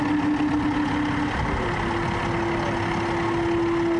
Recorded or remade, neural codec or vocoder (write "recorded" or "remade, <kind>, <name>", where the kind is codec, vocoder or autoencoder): recorded